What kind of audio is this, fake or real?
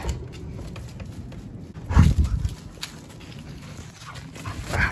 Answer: real